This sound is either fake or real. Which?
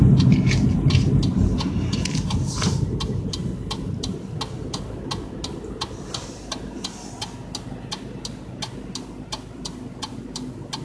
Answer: real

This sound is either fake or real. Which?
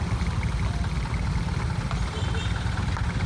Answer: real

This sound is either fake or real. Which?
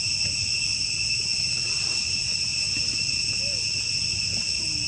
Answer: real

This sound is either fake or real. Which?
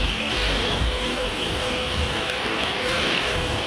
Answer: fake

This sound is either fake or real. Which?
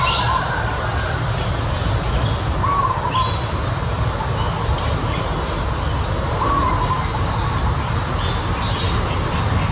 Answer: real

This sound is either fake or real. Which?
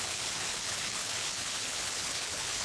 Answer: fake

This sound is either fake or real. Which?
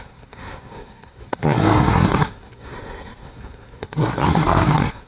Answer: fake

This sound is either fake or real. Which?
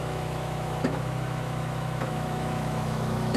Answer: fake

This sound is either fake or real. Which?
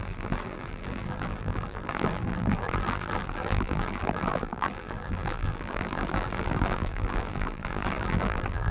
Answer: fake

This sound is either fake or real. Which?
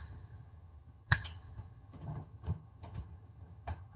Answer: fake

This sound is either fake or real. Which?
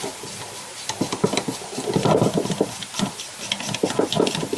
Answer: real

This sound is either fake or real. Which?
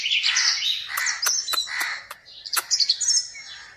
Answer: real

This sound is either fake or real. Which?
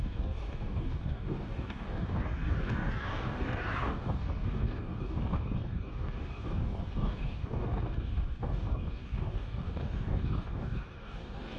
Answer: fake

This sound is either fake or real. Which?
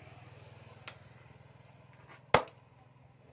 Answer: real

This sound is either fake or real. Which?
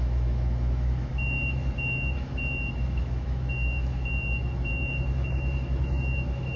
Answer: fake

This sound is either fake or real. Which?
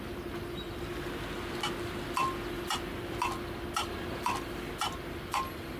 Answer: real